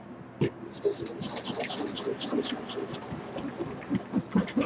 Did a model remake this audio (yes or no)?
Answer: no